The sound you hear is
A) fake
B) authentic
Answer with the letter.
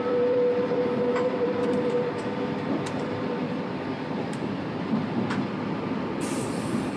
A